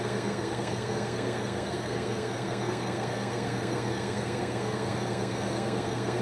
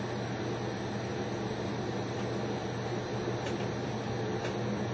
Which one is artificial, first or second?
first